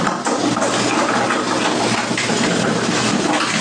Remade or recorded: recorded